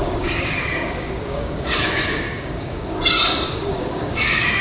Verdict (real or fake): fake